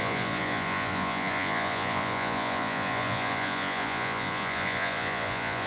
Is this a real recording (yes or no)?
no